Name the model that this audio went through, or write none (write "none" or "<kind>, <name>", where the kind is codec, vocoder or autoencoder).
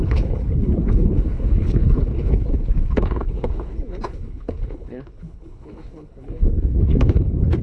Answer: codec, HILCodec